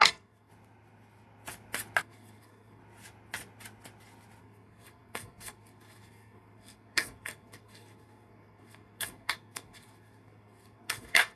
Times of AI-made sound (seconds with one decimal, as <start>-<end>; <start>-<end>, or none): 0.0-0.5; 2.0-2.8; 4.4-11.4